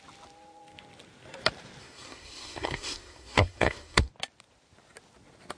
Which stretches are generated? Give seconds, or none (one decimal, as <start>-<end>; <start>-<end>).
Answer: 1.8-4.1